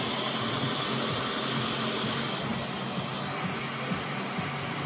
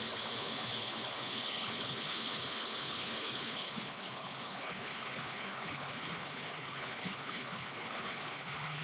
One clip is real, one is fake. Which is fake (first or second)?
second